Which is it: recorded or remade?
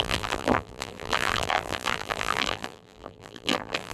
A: remade